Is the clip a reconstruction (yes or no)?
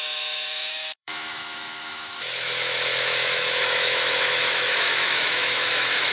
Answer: yes